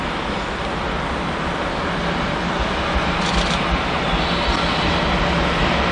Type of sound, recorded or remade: recorded